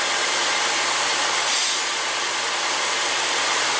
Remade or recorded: recorded